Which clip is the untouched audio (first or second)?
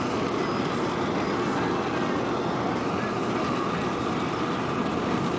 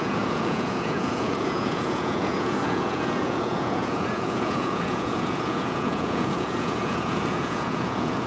first